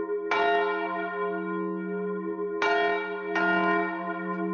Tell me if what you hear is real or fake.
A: real